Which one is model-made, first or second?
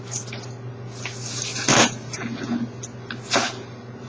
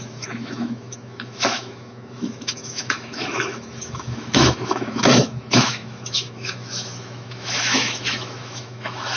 second